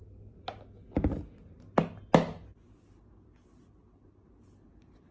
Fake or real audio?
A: real